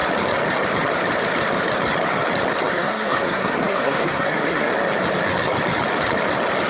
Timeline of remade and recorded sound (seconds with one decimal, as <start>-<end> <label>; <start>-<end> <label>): 0.0-2.7 recorded; 2.7-4.7 remade; 4.7-6.7 recorded